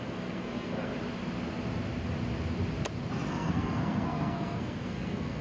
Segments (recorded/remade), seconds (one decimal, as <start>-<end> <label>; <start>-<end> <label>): 0.0-0.9 remade; 0.9-3.3 recorded; 3.3-5.4 remade